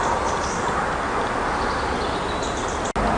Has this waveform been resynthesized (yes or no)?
no